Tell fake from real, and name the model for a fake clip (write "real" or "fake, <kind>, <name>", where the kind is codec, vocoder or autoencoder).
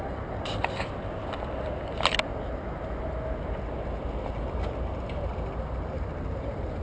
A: real